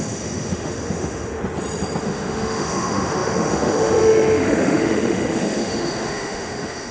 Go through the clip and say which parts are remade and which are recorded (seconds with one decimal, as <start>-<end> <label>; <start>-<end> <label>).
0.0-1.4 remade; 1.4-2.0 recorded; 2.0-6.9 remade